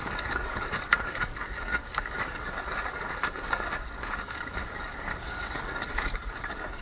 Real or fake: fake